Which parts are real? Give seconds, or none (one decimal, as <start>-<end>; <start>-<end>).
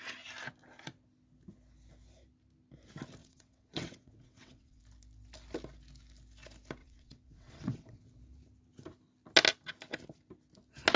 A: 0.0-3.2; 4.8-6.8; 8.0-11.0